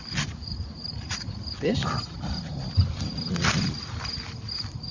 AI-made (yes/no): yes